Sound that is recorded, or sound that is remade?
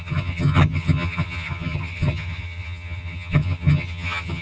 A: remade